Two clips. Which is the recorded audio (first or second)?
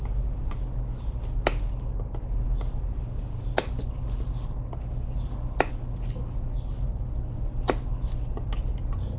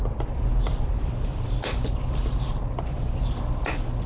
first